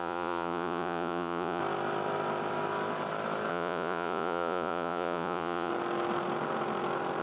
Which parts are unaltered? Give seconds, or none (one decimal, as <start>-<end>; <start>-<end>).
1.6-3.5; 5.7-7.2